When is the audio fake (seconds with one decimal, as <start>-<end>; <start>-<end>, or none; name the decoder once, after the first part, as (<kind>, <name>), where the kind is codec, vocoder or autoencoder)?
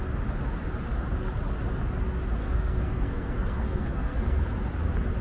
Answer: 2.4-4.4 (codec, SNAC)